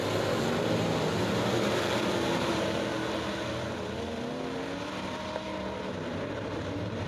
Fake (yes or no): no